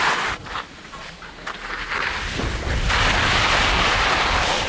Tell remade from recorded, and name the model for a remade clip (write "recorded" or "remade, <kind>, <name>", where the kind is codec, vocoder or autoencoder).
recorded